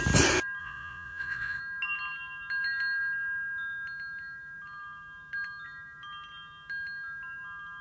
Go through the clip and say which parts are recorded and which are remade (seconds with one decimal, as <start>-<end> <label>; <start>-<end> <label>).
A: 0.0-0.6 recorded; 0.6-1.6 remade; 1.6-7.8 recorded